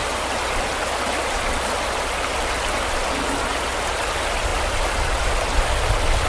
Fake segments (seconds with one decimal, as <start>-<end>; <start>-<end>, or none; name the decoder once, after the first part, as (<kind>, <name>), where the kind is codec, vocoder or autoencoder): none